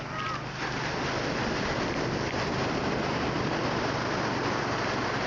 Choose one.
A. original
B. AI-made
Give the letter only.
A